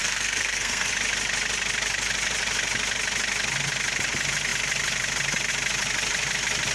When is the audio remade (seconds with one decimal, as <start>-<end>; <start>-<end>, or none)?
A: 0.0-0.9